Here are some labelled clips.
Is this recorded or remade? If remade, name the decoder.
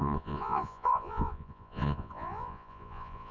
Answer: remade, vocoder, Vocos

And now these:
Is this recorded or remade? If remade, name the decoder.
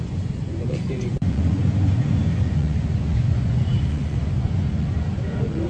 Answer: remade, vocoder, Vocos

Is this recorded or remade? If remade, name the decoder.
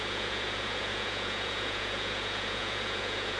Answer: remade, vocoder, Vocos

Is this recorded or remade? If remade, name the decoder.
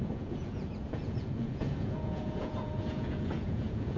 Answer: remade, vocoder, Vocos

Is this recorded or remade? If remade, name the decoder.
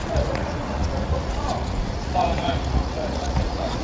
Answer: remade, vocoder, Vocos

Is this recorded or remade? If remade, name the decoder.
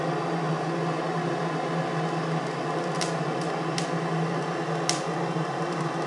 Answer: recorded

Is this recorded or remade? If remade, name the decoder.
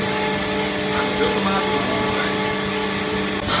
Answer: recorded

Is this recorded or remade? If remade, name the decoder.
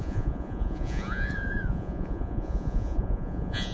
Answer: remade, vocoder, Vocos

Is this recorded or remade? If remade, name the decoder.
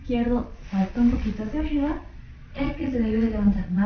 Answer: remade, vocoder, Vocos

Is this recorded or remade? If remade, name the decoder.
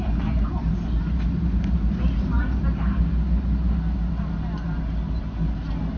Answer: recorded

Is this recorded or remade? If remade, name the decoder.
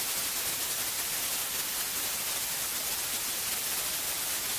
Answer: recorded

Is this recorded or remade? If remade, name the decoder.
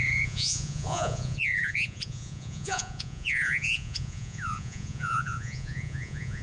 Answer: remade, vocoder, Vocos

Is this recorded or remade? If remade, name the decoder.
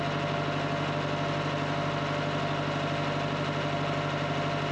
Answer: recorded